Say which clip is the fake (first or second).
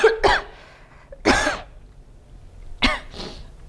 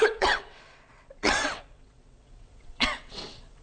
second